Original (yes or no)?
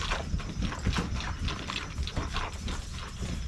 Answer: yes